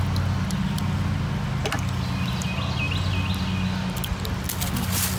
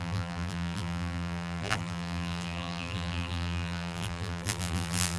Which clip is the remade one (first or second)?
second